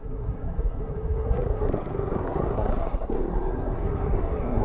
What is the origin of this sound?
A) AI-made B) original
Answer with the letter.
A